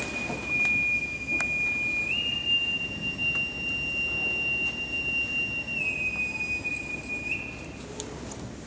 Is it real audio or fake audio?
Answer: real